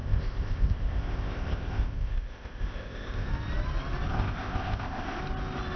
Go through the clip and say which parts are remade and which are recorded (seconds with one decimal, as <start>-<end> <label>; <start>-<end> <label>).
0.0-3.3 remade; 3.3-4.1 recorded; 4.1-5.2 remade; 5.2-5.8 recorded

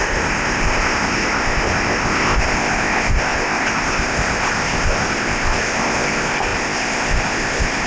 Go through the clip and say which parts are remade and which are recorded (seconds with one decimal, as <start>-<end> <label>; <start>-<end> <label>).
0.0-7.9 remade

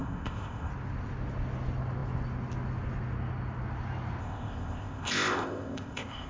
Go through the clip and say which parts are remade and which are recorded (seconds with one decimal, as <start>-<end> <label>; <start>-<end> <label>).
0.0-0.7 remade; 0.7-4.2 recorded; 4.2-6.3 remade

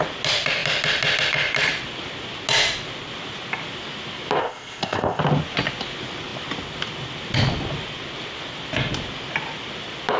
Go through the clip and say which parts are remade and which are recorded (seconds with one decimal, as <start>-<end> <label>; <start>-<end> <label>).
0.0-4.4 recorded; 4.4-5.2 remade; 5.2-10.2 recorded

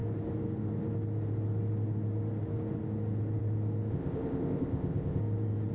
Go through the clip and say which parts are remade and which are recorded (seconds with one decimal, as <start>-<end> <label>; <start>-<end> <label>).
0.0-3.9 recorded; 3.9-5.2 remade; 5.2-5.7 recorded